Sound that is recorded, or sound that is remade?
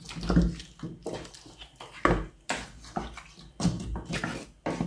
recorded